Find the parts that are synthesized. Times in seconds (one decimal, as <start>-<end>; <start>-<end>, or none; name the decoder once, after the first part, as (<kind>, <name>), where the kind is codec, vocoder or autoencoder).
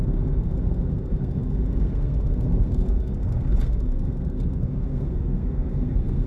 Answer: 0.0-6.3 (codec, SNAC)